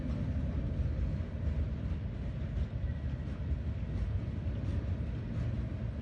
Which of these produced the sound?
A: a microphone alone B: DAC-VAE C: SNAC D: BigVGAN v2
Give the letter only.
A